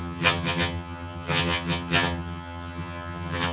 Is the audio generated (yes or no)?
yes